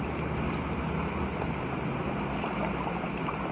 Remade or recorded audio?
recorded